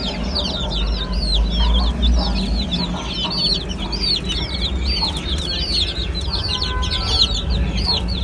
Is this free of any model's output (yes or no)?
yes